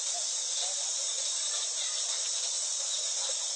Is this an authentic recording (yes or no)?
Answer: yes